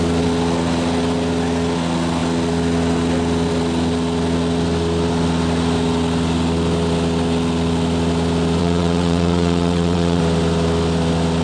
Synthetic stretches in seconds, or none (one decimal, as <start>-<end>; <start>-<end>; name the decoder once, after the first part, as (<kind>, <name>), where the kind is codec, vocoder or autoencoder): 8.6-10.2 (vocoder, WaveNeXt)